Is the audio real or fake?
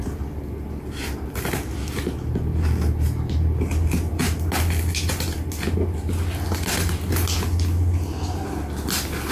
real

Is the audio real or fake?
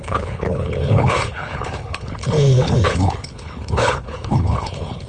fake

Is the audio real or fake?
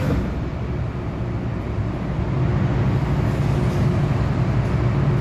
real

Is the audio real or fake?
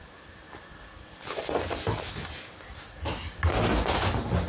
real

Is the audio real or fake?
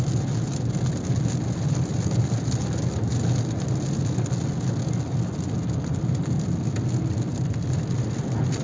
real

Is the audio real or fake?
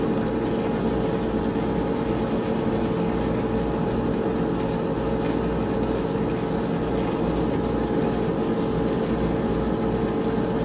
real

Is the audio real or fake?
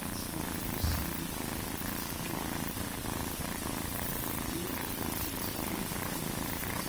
fake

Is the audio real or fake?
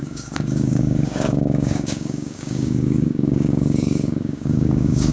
fake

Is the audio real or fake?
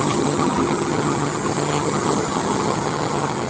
fake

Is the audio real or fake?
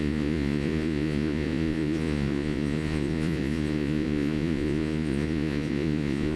fake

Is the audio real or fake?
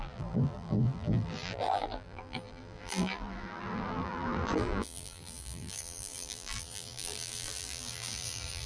fake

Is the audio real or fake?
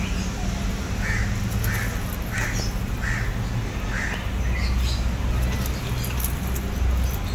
real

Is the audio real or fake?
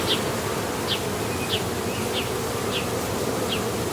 real